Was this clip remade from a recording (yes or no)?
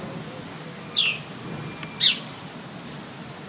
no